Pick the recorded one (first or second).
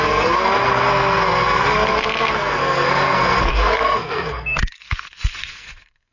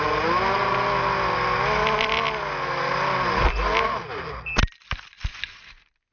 second